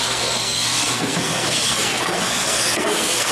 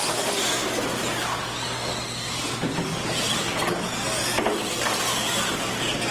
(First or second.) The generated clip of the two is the first